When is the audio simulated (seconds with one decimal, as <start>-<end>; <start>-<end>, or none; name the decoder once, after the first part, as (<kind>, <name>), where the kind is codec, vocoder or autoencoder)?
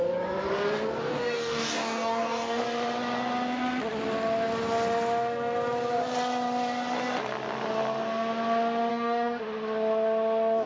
1.0-2.6 (codec, DAC); 8.9-9.4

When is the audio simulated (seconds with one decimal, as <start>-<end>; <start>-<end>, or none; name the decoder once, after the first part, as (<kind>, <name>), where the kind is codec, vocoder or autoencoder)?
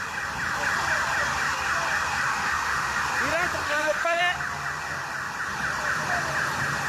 2.3-3.0 (autoencoder, DAC-VAE); 3.6-4.2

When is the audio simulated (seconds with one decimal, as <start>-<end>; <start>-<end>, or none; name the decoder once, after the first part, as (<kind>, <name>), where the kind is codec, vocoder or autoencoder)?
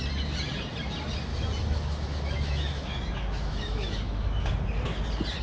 1.3-4.5 (autoencoder, DAC-VAE)